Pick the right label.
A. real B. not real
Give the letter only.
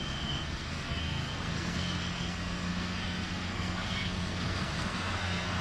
B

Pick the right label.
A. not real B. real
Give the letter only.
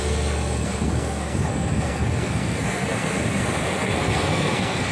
A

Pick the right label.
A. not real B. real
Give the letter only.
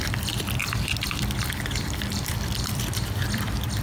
A